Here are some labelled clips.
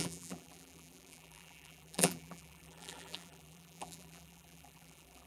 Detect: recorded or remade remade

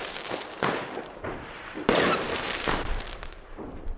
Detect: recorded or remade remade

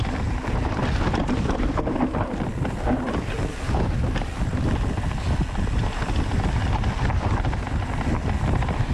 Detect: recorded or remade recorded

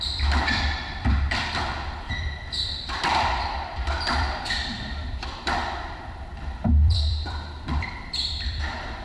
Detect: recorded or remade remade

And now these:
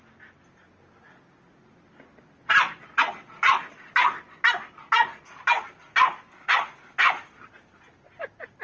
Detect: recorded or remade recorded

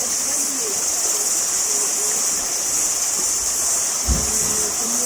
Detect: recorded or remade recorded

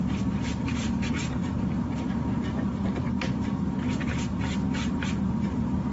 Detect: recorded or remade remade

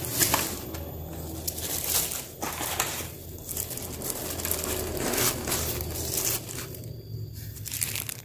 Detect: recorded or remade recorded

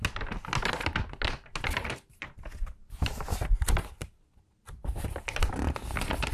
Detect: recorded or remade recorded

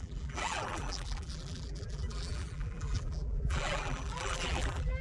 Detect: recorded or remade remade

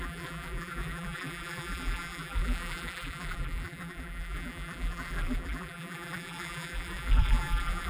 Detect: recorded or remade remade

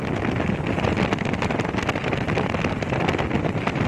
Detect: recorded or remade recorded